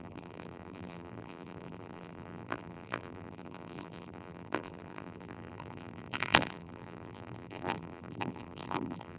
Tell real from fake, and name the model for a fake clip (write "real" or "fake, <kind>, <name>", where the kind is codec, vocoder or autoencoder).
fake, vocoder, BigVGAN v2